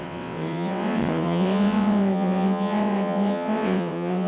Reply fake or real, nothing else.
fake